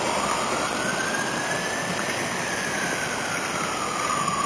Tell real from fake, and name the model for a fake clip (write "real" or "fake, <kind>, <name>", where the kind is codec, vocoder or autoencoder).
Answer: real